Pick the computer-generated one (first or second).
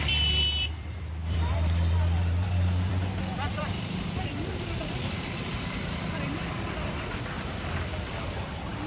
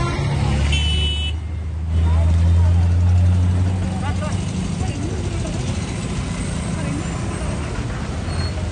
first